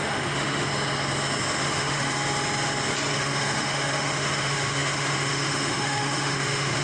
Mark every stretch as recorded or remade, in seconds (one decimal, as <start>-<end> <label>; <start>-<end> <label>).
0.0-0.7 remade; 0.7-1.6 recorded; 1.6-2.1 remade; 2.1-3.1 recorded; 3.1-6.8 remade